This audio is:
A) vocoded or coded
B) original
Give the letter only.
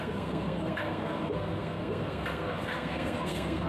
A